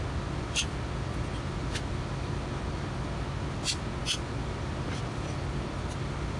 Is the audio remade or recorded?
recorded